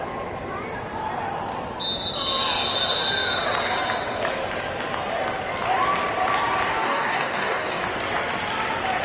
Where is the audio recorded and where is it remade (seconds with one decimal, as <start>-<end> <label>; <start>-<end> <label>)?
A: 0.0-6.8 recorded; 6.8-7.8 remade; 7.8-9.0 recorded